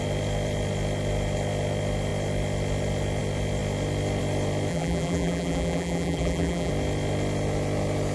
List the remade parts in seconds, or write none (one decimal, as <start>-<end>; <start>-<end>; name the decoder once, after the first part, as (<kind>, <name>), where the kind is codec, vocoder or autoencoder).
4.7-6.7 (vocoder, BigVGAN v2)